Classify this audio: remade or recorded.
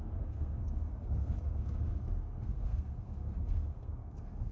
remade